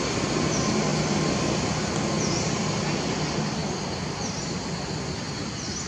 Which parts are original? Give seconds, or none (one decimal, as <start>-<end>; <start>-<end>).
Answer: 0.0-5.9